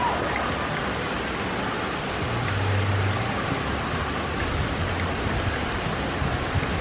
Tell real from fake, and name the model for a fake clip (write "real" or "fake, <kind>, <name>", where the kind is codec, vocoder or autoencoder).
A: real